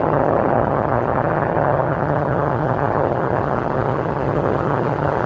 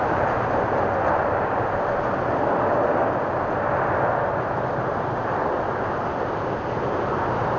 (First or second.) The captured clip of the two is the second